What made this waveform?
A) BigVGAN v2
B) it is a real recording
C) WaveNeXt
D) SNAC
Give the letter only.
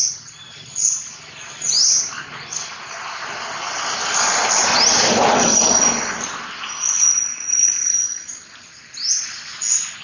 B